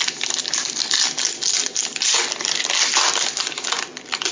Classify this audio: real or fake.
real